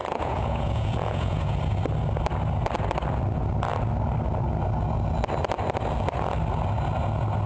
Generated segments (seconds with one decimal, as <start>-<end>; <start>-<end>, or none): 0.0-1.6